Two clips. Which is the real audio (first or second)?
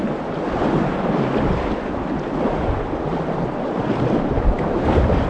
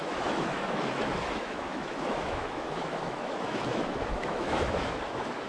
first